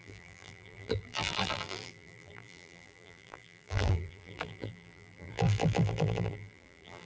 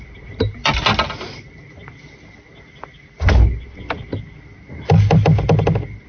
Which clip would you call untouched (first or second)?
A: second